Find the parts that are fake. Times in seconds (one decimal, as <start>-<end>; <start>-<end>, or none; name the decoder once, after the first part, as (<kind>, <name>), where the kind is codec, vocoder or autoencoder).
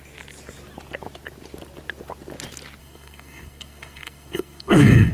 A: 2.8-5.1 (codec, SNAC)